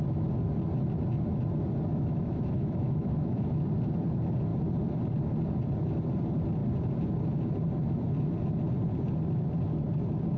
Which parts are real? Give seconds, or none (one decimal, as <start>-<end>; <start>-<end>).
0.0-1.9; 3.6-10.4